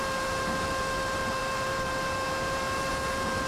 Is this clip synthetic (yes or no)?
yes